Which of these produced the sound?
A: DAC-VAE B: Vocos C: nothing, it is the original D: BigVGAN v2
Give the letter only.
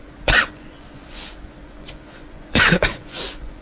B